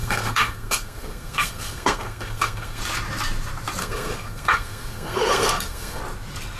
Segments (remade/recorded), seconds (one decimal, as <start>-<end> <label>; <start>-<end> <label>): 0.0-2.8 remade; 2.8-3.8 recorded; 3.8-6.0 remade; 6.0-6.6 recorded